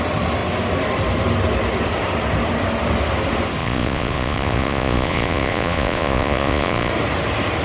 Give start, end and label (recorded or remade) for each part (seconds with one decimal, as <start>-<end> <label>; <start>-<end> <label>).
0.0-3.6 recorded; 3.6-6.9 remade; 6.9-7.6 recorded